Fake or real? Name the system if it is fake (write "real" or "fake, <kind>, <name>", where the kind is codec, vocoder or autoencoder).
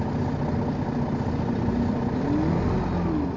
real